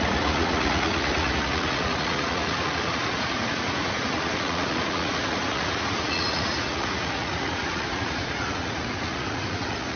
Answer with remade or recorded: remade